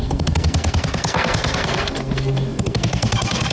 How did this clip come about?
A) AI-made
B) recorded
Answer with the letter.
A